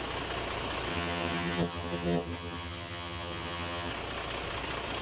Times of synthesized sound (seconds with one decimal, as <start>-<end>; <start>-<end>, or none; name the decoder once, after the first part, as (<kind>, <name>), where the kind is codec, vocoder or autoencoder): 0.9-3.9 (vocoder, HiFi-GAN)